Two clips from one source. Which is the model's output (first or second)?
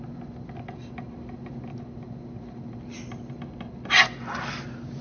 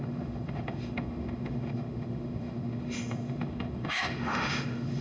second